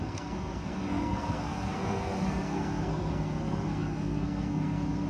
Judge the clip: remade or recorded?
remade